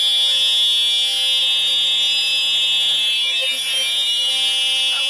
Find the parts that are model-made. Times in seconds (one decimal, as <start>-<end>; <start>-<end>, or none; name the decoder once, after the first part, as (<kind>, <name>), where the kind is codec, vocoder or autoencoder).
1.4-4.3 (autoencoder, DAC-VAE)